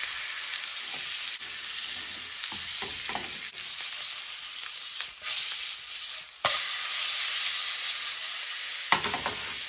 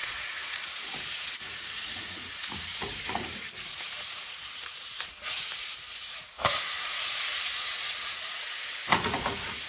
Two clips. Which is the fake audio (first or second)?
second